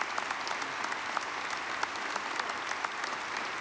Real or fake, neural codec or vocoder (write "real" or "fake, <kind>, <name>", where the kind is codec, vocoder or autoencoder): fake, vocoder, BigVGAN v2